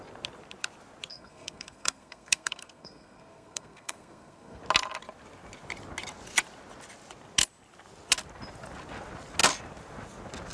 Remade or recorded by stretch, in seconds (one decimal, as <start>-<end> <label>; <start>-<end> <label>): 0.0-1.1 recorded; 1.1-4.6 remade; 4.6-10.5 recorded